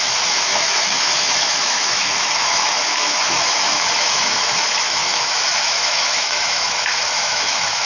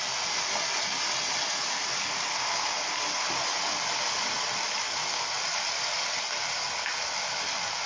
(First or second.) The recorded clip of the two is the second